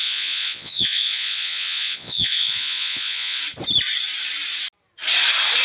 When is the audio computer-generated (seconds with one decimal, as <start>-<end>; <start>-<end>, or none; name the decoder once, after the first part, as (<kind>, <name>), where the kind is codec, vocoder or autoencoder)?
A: 0.0-3.4 (vocoder, Vocos)